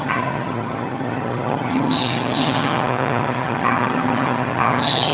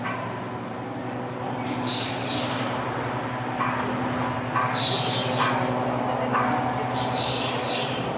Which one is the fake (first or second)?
first